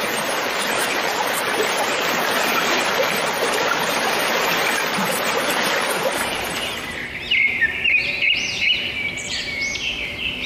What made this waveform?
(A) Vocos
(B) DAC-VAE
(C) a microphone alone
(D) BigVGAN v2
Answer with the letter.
D